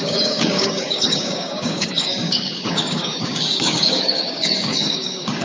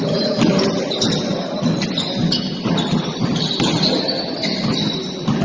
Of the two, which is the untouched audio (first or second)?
second